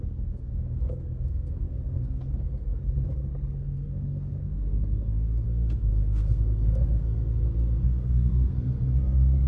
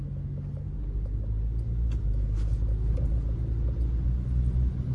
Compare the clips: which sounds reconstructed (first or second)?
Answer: first